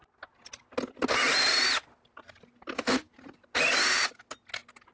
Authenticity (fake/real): real